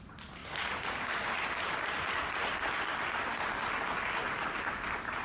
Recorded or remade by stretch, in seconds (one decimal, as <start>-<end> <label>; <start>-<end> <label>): 0.0-5.2 recorded